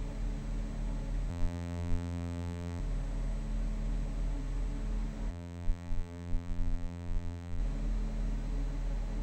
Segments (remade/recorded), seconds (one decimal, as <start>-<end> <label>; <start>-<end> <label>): 0.0-1.3 recorded; 1.3-2.8 remade; 2.8-5.3 recorded; 5.3-7.6 remade; 7.6-9.2 recorded